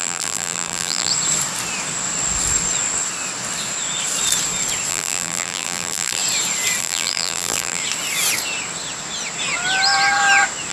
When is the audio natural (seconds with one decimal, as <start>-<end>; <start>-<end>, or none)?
1.1-4.9; 6.2-6.8; 7.8-10.7